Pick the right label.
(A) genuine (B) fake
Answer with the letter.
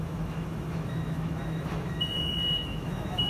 B